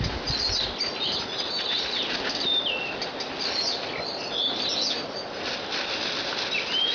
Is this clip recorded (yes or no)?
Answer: yes